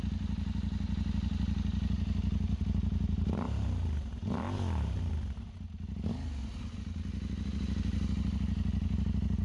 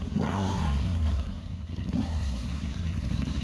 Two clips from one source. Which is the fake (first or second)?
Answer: second